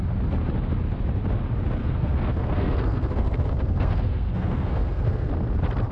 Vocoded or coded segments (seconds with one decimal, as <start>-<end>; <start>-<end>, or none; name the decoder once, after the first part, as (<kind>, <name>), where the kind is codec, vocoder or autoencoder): 1.8-5.3 (codec, SNAC)